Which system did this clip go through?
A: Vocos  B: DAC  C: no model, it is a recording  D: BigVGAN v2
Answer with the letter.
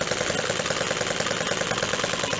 C